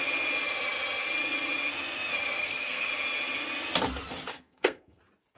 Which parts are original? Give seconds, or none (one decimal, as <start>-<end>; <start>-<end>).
0.0-2.4; 2.9-4.3; 5.0-5.4